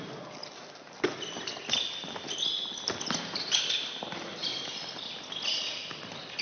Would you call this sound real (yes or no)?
yes